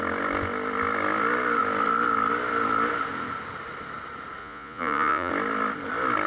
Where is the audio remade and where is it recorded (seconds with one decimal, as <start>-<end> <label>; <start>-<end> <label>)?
0.0-4.4 recorded; 4.4-5.3 remade; 5.3-6.3 recorded